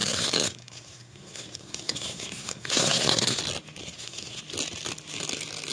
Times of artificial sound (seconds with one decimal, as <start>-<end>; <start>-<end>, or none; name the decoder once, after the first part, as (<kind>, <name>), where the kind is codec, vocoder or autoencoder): 0.0-3.4 (codec, SNAC); 3.8-4.4